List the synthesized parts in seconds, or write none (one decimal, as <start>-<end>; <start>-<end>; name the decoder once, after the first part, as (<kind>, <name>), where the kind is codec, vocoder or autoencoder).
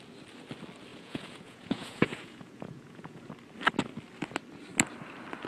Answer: 0.9-3.3 (vocoder, Vocos)